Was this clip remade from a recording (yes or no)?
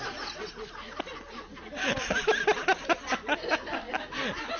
no